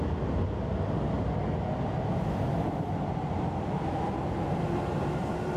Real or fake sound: real